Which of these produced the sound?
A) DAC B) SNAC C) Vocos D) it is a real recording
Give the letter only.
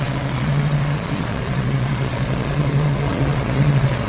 C